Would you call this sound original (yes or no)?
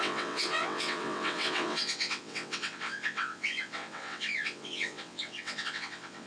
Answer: no